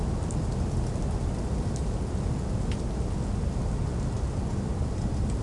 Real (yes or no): yes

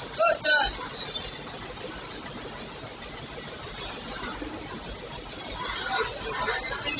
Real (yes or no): yes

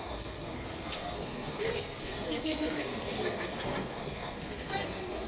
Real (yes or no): no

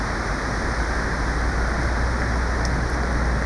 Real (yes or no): yes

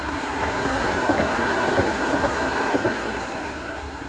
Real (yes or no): no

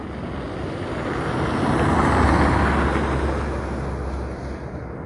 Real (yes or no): yes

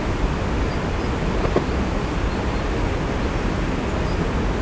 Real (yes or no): yes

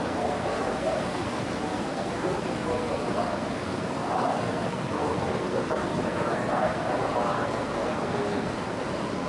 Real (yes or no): no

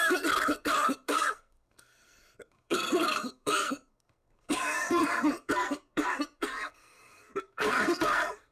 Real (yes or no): no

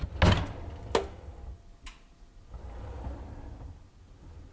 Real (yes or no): yes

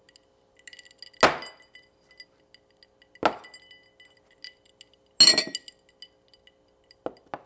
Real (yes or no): yes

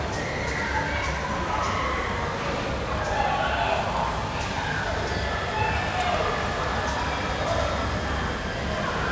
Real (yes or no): yes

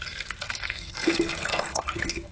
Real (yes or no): no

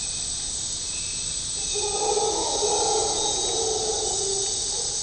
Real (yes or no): yes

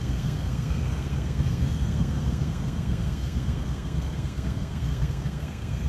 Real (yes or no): no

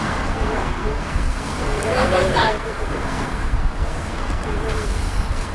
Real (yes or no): no